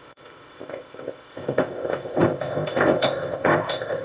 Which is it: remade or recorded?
remade